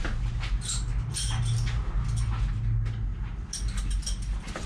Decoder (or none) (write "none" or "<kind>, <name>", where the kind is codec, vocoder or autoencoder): none